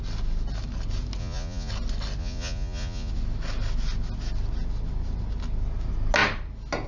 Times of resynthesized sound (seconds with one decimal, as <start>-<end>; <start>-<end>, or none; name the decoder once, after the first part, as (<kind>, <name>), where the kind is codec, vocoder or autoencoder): 1.2-1.7 (vocoder, Vocos); 2.2-3.1